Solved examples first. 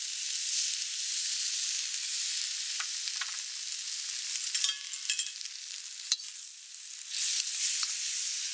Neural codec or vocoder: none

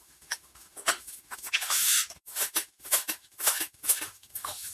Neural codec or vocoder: autoencoder, DAC-VAE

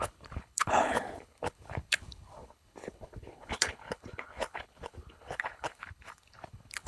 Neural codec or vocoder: codec, HILCodec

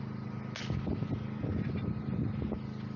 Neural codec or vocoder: none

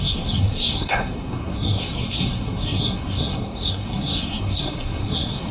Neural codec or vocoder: codec, SNAC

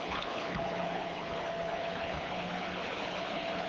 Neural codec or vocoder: codec, HILCodec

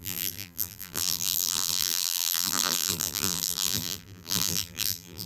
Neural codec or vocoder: vocoder, BigVGAN v2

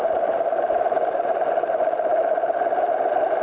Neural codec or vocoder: none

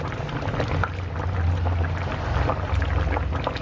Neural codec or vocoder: none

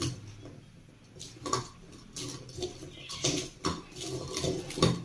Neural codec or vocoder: none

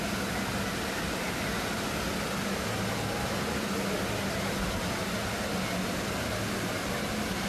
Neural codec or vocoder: none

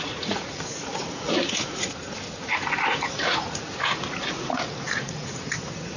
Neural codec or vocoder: vocoder, Vocos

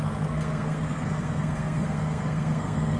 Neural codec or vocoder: codec, SNAC